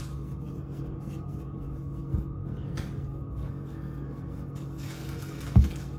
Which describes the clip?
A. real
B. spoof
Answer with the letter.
B